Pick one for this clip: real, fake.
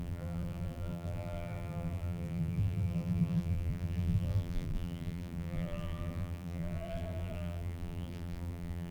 fake